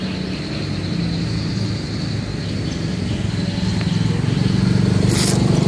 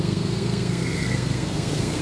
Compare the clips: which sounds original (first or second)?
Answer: first